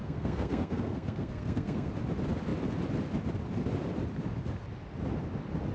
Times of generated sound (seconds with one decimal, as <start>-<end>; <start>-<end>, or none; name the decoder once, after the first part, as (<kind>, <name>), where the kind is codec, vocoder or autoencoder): 0.0-1.9 (codec, SNAC)